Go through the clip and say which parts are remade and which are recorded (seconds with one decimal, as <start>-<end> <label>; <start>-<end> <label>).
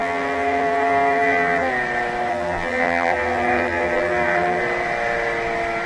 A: 0.0-1.7 remade; 1.7-2.3 recorded; 2.3-4.6 remade; 4.6-5.9 recorded